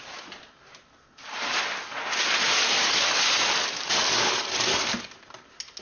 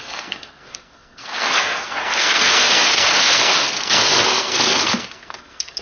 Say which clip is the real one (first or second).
first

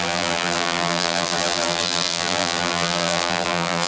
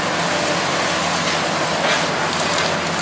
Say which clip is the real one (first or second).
second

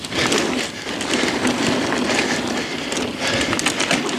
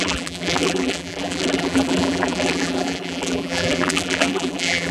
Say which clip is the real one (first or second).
first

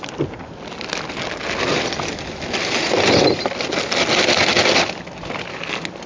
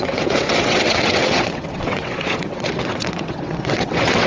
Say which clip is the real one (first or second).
first